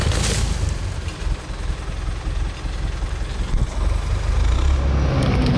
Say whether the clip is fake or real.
real